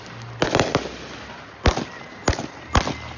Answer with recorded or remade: recorded